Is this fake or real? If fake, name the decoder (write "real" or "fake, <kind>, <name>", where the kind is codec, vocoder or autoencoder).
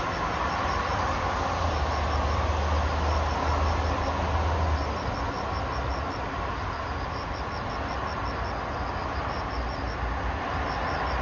real